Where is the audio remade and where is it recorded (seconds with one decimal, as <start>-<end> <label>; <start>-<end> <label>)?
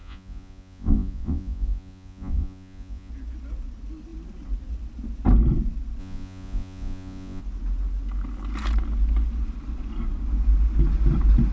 0.0-3.1 remade; 3.1-6.0 recorded; 6.0-7.4 remade; 7.4-11.5 recorded